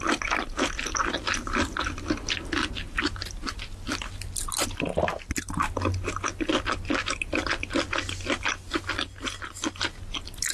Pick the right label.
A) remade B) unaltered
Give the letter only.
B